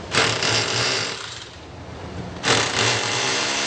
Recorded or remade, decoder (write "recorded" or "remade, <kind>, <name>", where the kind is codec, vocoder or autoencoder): remade, vocoder, BigVGAN v2